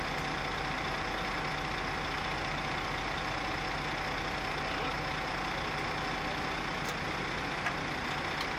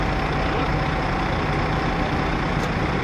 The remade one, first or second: second